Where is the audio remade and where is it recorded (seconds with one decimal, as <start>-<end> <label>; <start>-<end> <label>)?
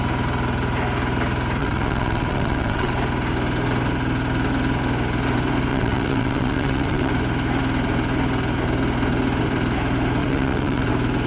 0.0-1.6 recorded; 1.6-2.9 remade; 2.9-5.7 recorded; 5.7-7.1 remade; 7.1-10.2 recorded; 10.2-10.9 remade; 10.9-11.3 recorded